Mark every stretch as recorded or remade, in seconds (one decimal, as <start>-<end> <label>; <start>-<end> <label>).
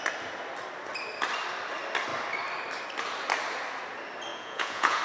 0.0-4.3 recorded; 4.3-5.0 remade